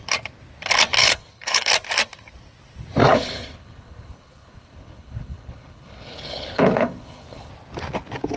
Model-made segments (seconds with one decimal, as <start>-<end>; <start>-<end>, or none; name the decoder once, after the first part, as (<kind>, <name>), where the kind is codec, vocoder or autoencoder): 1.0-1.7 (codec, HILCodec); 3.0-7.5